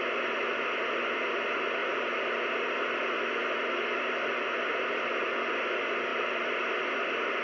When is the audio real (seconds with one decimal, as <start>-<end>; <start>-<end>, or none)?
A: 0.0-3.4; 4.7-6.1; 6.9-7.4